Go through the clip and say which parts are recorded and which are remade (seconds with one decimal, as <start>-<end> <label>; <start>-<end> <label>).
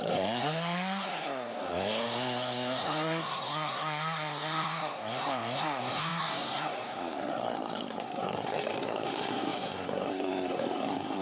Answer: 0.0-11.2 remade